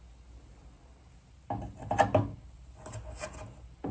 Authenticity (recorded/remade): recorded